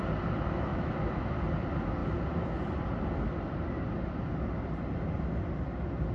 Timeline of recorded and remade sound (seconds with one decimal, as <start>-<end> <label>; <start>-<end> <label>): 0.0-0.7 recorded; 0.7-1.3 remade; 1.3-6.1 recorded